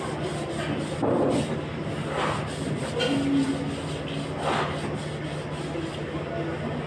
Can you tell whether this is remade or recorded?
recorded